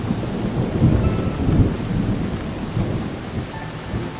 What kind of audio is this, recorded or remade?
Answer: recorded